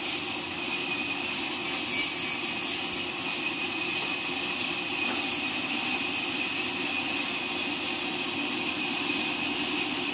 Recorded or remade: recorded